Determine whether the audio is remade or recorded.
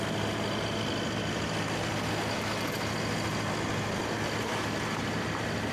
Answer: recorded